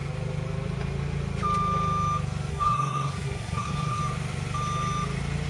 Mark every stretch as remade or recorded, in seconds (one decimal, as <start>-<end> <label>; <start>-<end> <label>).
0.0-2.5 recorded; 2.5-4.0 remade; 4.0-5.5 recorded